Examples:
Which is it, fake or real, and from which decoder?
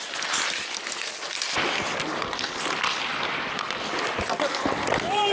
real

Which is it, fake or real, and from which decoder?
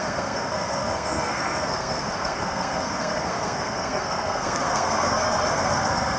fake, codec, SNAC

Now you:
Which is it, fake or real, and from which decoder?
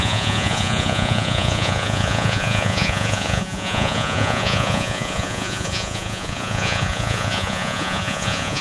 fake, vocoder, Vocos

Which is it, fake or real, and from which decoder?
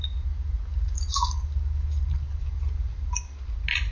real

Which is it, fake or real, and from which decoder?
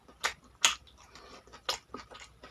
real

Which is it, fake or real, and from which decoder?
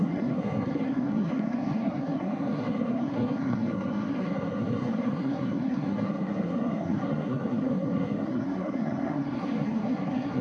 fake, codec, SNAC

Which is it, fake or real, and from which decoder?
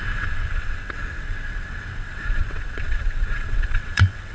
fake, vocoder, WaveNeXt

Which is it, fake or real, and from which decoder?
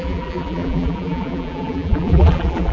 fake, vocoder, BigVGAN v2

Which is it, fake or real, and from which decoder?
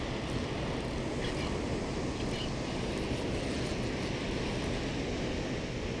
real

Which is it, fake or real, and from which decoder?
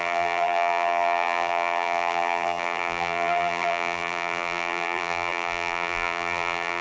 fake, vocoder, BigVGAN v2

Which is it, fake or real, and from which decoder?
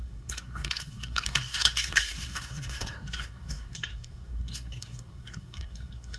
fake, codec, SNAC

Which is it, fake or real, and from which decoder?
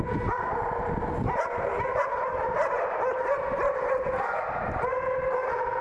real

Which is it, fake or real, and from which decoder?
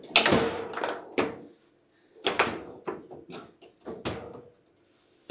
real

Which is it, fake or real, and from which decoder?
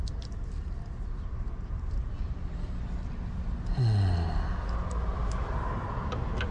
real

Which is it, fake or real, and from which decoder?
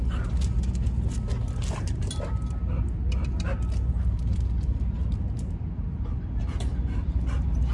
real